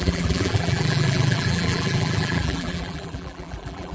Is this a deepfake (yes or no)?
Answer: yes